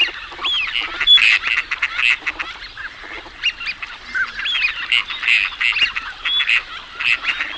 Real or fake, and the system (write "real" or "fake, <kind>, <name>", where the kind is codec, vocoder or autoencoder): real